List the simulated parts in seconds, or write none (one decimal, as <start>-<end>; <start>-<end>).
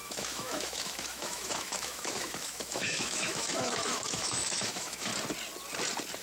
0.0-5.1